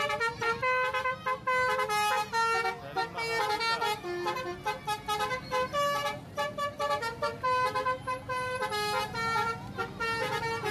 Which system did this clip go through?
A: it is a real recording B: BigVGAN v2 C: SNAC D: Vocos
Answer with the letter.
A